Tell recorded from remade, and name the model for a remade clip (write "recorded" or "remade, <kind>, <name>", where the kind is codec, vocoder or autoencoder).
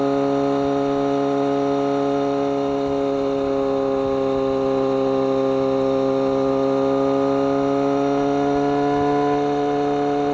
recorded